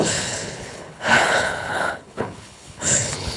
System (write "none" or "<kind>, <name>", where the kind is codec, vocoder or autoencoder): codec, HILCodec